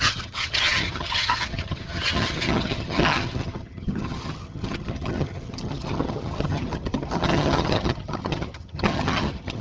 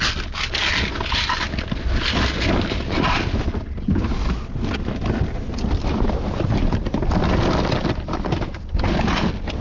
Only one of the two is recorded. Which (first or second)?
second